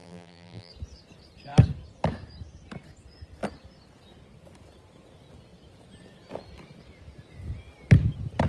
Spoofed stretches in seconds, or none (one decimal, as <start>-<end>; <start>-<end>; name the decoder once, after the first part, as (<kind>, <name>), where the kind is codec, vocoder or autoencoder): 0.0-0.7 (vocoder, BigVGAN v2)